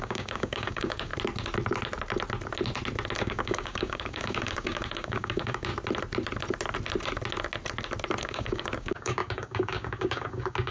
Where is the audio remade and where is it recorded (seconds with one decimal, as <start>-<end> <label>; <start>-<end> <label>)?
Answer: 0.0-1.1 remade; 1.1-3.2 recorded; 3.2-5.7 remade; 5.7-8.2 recorded; 8.2-10.7 remade